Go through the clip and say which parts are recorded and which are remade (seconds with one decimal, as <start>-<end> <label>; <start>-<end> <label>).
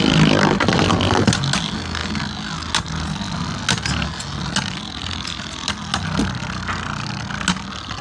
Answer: 0.0-8.0 recorded